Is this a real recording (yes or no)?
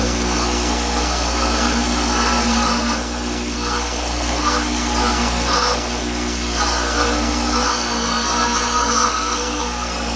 no